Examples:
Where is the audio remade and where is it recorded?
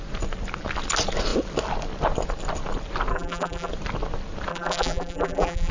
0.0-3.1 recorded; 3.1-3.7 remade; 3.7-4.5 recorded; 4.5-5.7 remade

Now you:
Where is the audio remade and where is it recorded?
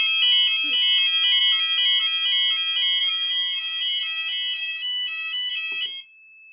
0.0-3.0 recorded; 3.0-4.0 remade; 4.0-4.6 recorded; 4.6-5.5 remade; 5.5-6.5 recorded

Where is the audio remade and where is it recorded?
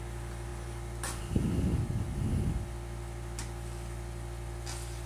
0.0-5.1 recorded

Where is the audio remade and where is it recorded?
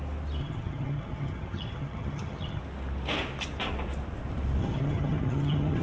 0.0-0.4 recorded; 0.4-2.6 remade; 2.6-4.6 recorded; 4.6-5.8 remade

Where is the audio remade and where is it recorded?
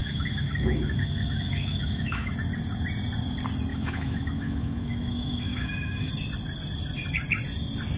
0.0-2.3 remade; 2.3-3.7 recorded; 3.7-6.1 remade; 6.1-8.0 recorded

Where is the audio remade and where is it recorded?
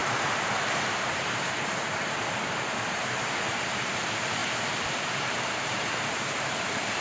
0.0-4.4 remade; 4.4-5.0 recorded; 5.0-7.0 remade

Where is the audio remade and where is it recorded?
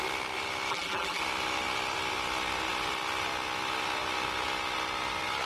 0.0-0.7 recorded; 0.7-1.2 remade; 1.2-5.5 recorded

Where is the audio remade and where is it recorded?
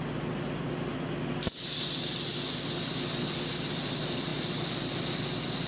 0.0-5.7 recorded